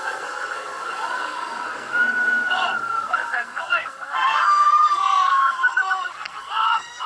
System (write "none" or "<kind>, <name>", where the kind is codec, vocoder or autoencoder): codec, SNAC